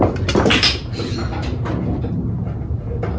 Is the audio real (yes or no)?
yes